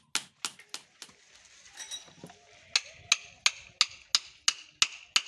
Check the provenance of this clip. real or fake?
real